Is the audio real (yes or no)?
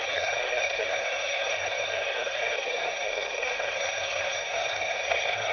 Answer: no